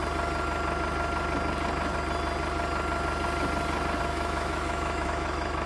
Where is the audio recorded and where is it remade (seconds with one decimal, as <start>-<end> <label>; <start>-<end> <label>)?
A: 0.0-4.1 recorded; 4.1-5.7 remade